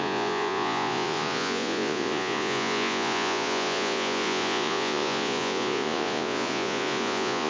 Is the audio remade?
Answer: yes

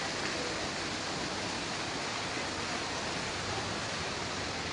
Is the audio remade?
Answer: no